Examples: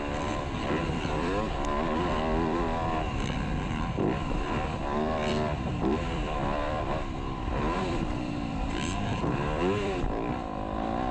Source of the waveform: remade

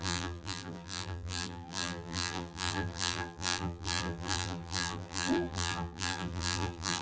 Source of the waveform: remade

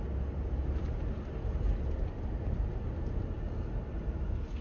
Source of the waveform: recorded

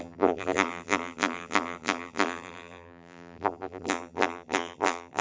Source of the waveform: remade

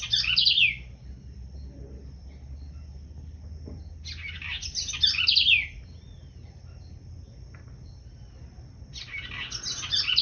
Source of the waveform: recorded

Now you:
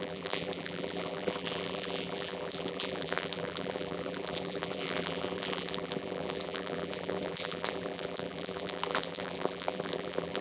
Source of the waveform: remade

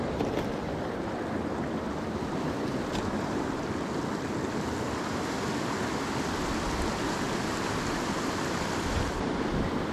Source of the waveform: recorded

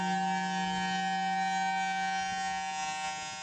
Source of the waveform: recorded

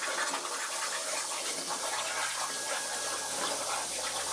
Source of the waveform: recorded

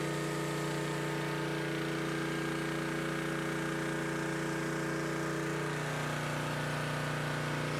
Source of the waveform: recorded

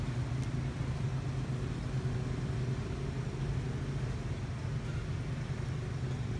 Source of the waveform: recorded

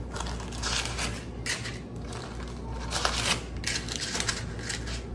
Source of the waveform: recorded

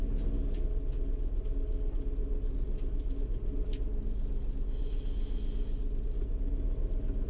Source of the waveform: recorded